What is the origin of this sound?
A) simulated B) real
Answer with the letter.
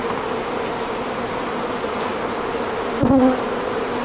B